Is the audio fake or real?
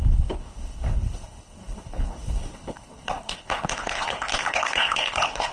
fake